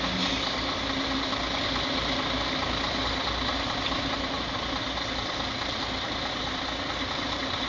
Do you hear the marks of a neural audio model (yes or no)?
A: no